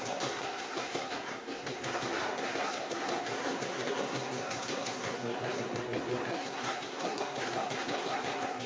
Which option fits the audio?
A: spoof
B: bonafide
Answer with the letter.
A